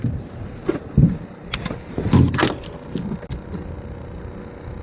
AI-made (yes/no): no